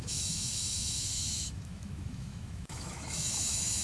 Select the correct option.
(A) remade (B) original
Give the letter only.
A